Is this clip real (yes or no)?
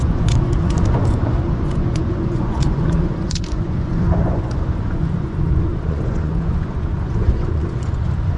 no